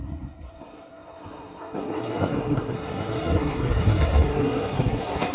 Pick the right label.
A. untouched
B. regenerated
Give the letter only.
B